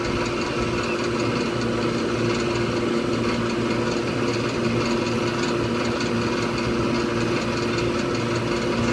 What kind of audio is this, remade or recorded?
recorded